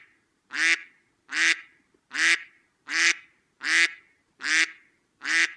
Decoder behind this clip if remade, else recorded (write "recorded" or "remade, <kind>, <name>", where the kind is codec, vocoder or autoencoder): recorded